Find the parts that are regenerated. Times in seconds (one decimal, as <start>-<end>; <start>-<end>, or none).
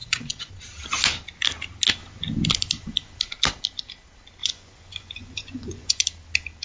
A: 0.0-0.5; 4.4-6.0